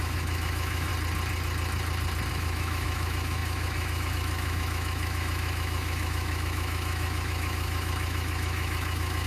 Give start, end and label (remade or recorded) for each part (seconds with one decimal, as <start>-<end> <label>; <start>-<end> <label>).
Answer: 0.0-0.9 remade; 0.9-2.3 recorded; 2.3-9.3 remade